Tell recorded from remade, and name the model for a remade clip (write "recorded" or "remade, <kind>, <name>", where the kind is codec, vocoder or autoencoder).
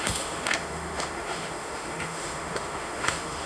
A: remade, autoencoder, DAC-VAE